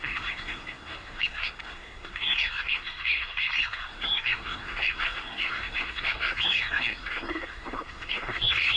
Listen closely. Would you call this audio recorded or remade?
remade